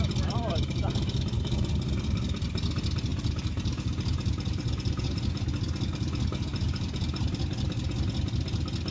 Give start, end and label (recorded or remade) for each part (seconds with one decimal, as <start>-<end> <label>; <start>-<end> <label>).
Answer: 0.0-3.1 recorded; 3.1-5.4 remade; 5.4-6.5 recorded; 6.5-7.2 remade; 7.2-8.9 recorded